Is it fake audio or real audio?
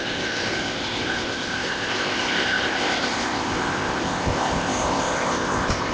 fake